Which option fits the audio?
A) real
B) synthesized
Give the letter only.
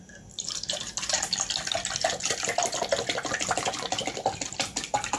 A